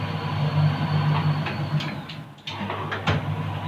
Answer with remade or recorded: recorded